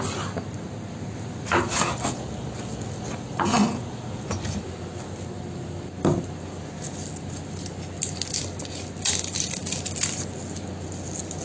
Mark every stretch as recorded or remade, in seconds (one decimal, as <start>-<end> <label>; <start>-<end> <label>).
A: 0.0-11.4 recorded